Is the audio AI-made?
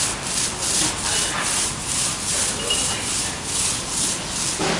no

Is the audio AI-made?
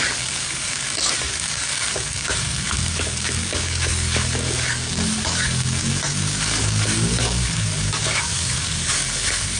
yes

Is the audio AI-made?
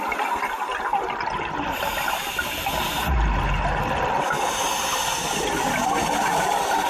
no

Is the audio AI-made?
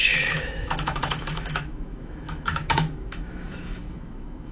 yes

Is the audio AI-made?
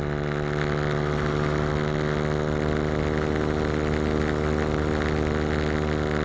no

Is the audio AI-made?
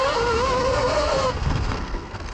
yes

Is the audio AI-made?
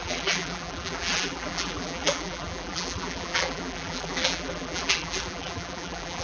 yes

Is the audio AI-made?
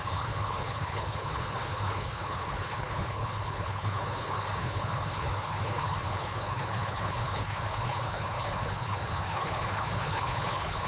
yes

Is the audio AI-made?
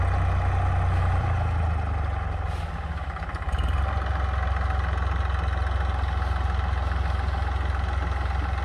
no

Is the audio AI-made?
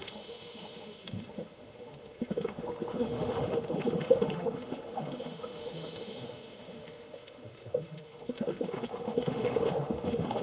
yes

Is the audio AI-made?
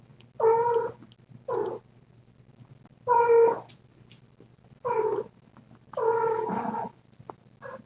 no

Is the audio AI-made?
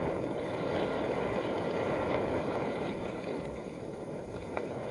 yes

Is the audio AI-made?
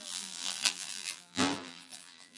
yes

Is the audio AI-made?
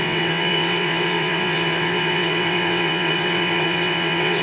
yes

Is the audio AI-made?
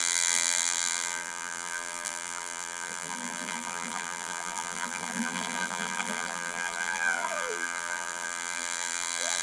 yes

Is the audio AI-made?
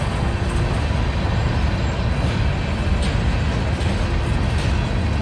no